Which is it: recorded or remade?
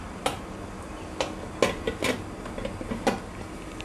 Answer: recorded